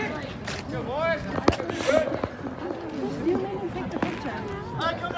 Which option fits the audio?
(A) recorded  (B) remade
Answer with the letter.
A